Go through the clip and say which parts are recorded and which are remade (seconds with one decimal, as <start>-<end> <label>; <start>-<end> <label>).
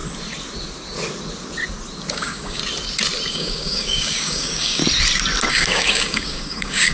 0.0-2.1 recorded; 2.1-2.6 remade; 2.6-3.3 recorded; 3.3-4.8 remade; 4.8-5.5 recorded; 5.5-6.9 remade